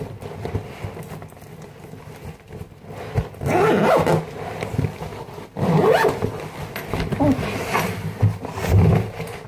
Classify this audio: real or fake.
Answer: real